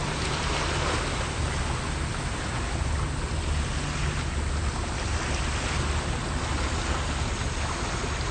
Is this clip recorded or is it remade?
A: recorded